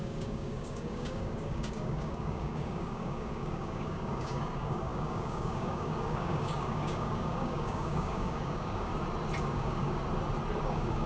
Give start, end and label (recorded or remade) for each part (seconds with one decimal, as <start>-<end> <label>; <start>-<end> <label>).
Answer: 0.0-8.9 remade; 8.9-9.4 recorded; 9.4-10.0 remade; 10.0-10.6 recorded; 10.6-11.1 remade

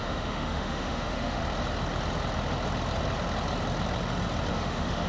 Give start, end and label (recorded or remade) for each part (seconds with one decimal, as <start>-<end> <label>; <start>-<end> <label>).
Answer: 0.0-1.4 remade; 1.4-4.5 recorded; 4.5-5.1 remade

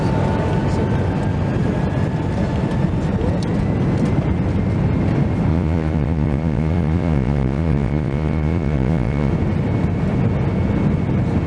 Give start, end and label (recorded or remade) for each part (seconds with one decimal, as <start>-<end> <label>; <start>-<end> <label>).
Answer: 0.0-5.5 recorded; 5.5-9.3 remade; 9.3-11.5 recorded

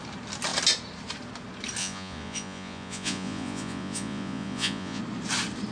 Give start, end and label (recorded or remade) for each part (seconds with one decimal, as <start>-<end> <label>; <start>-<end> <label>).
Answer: 0.0-1.8 recorded; 1.8-5.0 remade; 5.0-5.7 recorded

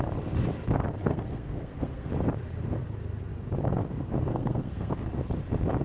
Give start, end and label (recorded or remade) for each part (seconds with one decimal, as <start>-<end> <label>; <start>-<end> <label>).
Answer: 0.0-1.0 recorded; 1.0-2.1 remade; 2.1-4.3 recorded; 4.3-4.9 remade; 4.9-5.8 recorded

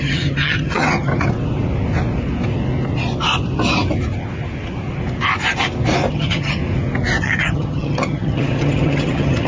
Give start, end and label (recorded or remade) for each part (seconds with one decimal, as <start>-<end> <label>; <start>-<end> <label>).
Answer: 0.0-1.1 remade; 1.1-6.1 recorded; 6.1-6.6 remade; 6.6-7.2 recorded; 7.2-9.5 remade

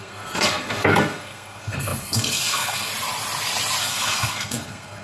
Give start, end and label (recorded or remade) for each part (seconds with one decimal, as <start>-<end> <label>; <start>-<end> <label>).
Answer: 0.0-2.9 remade; 2.9-3.8 recorded; 3.8-5.0 remade